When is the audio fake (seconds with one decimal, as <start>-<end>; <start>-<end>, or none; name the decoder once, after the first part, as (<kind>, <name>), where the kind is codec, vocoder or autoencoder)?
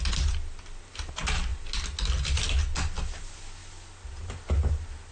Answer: none